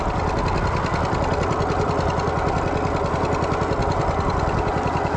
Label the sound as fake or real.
real